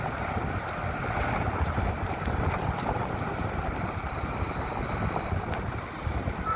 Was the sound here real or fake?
real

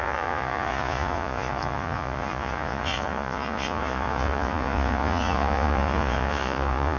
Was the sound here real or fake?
fake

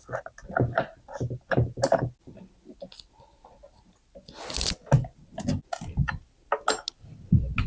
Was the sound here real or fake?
real